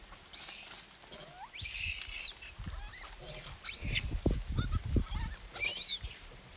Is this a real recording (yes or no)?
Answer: yes